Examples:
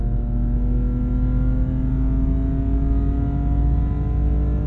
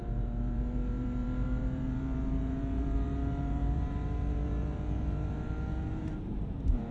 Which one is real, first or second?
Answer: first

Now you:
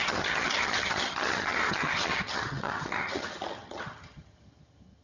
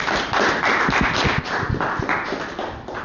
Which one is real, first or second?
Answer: second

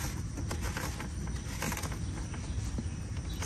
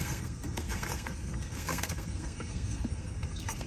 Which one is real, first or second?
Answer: first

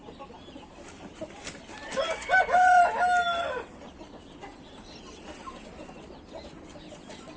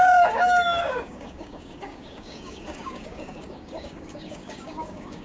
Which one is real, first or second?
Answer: first